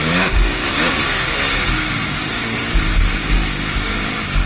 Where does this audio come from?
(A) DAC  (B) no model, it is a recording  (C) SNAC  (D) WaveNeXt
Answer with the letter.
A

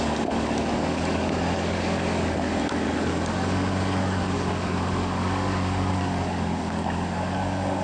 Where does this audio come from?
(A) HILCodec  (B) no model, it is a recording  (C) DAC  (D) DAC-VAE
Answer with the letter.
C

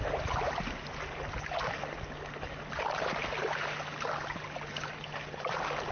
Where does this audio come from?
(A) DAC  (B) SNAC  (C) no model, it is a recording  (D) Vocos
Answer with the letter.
C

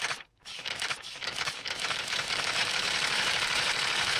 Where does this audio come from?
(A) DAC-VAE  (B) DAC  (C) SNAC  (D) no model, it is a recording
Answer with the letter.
B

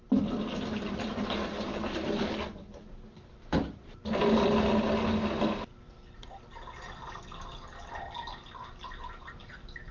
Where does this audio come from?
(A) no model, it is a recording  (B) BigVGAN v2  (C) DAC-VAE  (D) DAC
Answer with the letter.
A